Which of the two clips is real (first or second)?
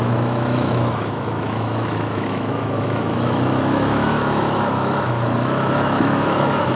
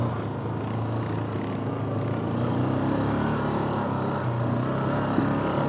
second